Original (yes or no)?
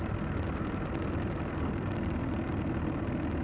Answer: yes